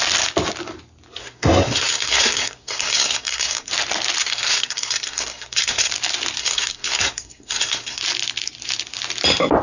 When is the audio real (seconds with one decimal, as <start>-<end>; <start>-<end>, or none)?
0.0-1.2; 3.7-4.2; 5.9-6.4; 8.0-9.6